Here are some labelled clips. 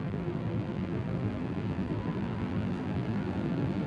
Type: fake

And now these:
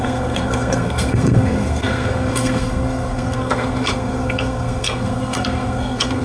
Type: fake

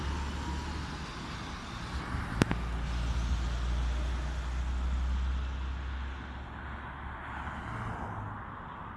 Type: real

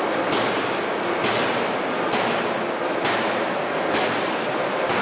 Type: real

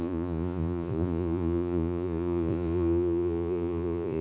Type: fake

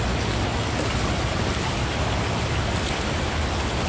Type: real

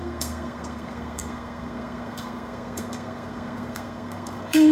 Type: fake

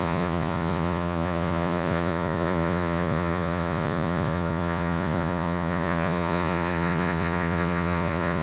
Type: fake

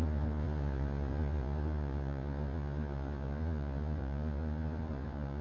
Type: fake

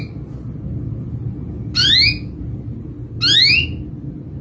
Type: real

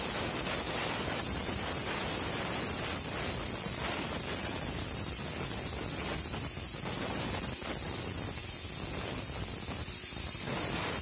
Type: real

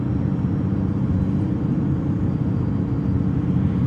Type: fake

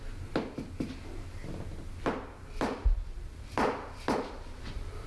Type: real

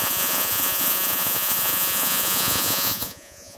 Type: fake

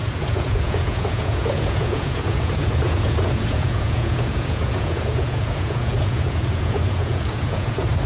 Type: fake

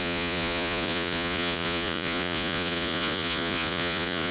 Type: fake